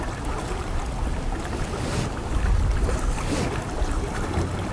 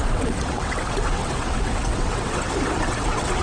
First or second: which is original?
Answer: first